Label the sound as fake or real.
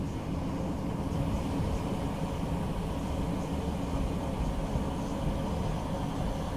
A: real